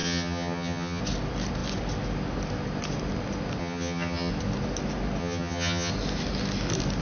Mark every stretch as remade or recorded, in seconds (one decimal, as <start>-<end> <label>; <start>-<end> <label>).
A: 0.0-1.0 remade; 1.0-3.6 recorded; 3.6-4.3 remade; 4.3-5.2 recorded; 5.2-5.9 remade; 5.9-7.0 recorded